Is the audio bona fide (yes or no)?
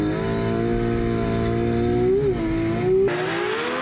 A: yes